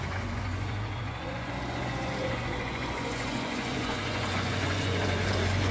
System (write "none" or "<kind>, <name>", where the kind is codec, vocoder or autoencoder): vocoder, Vocos